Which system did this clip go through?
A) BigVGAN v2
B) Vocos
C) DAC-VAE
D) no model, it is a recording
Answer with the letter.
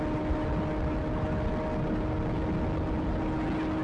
D